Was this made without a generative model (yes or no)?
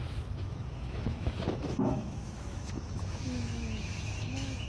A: no